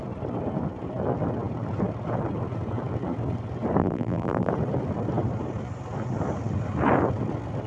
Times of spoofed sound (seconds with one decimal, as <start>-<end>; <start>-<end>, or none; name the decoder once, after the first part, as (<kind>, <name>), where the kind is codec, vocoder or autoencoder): 3.8-4.5 (vocoder, BigVGAN v2)